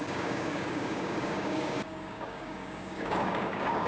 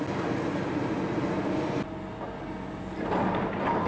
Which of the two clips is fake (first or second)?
first